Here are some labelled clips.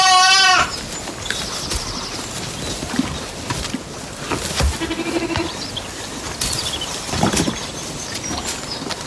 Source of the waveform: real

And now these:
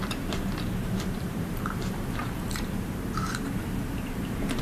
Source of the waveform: fake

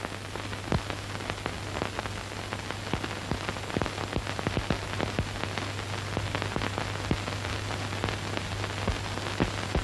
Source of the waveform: real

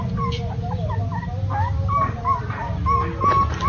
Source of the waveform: real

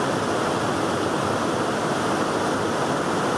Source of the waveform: real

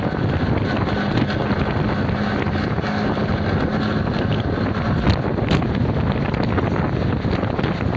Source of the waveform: real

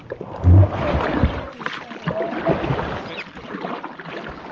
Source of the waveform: real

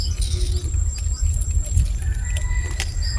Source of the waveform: real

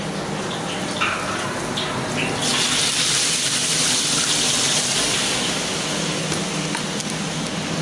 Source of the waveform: real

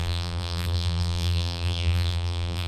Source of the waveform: fake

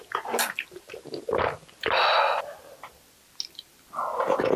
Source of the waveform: real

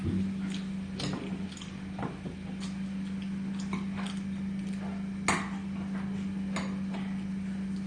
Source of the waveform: real